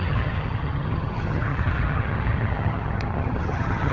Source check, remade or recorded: remade